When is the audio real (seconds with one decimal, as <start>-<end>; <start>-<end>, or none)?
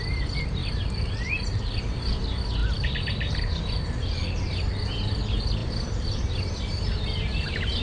0.0-0.6; 1.8-2.6; 4.7-5.6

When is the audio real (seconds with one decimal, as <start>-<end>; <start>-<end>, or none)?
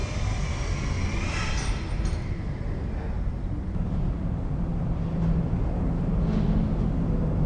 0.0-7.5